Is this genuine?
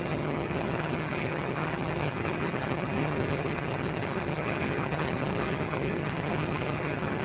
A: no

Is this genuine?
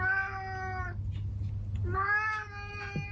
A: yes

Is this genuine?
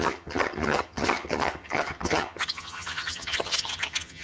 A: no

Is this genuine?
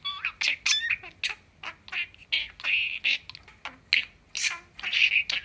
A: yes